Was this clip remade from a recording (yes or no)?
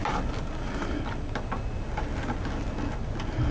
no